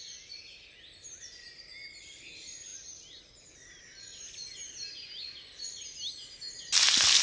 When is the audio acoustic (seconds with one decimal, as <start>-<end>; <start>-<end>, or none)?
0.0-7.2